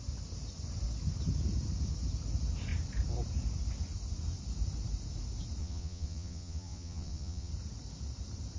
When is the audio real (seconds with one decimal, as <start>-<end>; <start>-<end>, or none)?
0.0-5.6; 7.5-8.6